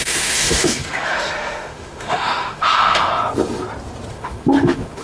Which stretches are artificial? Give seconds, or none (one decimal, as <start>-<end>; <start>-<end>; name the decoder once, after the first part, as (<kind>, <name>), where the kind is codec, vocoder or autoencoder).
0.0-3.1 (autoencoder, DAC-VAE); 4.1-5.0